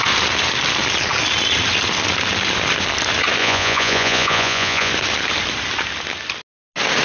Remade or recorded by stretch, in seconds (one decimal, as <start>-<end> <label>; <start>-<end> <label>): 0.0-3.4 recorded; 3.4-4.9 remade; 4.9-7.0 recorded